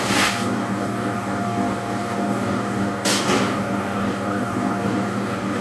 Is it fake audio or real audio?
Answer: fake